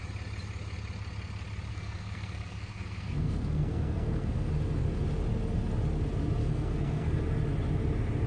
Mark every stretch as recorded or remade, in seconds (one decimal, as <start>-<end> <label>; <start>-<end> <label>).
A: 0.0-1.7 recorded; 1.7-4.5 remade; 4.5-6.4 recorded; 6.4-7.2 remade; 7.2-8.3 recorded